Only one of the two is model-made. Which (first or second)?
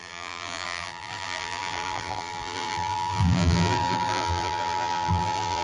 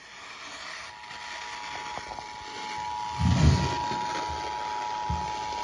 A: first